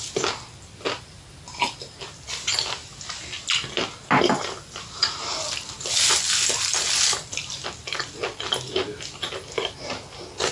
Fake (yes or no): no